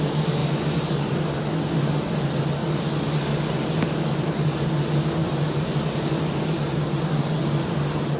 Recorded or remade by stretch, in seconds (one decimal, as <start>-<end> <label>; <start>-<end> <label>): 0.0-0.4 recorded; 0.4-1.4 remade; 1.4-5.2 recorded; 5.2-7.2 remade; 7.2-8.2 recorded